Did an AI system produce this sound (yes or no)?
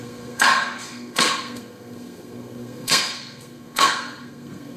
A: yes